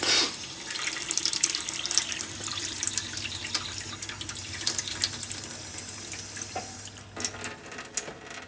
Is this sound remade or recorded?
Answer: recorded